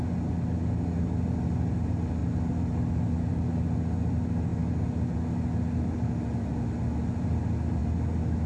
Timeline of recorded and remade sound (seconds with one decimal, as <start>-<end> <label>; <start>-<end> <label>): 0.0-8.5 recorded